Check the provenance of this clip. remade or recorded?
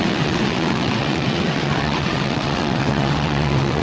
remade